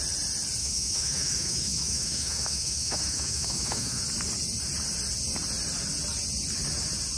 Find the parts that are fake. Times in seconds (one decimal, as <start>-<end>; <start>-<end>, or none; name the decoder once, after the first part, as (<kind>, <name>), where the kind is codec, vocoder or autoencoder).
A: 0.6-4.0 (autoencoder, DAC-VAE)